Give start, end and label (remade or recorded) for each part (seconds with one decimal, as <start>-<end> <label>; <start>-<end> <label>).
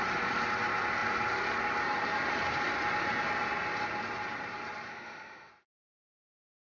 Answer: 0.0-4.9 recorded; 4.9-5.5 remade; 5.5-6.7 recorded